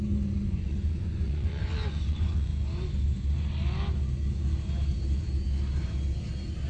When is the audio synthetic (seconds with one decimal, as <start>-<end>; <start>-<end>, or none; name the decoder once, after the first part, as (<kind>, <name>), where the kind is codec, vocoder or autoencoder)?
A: 0.5-2.5 (vocoder, Vocos)